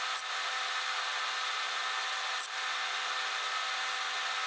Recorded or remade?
recorded